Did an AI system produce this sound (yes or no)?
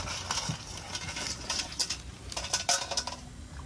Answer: no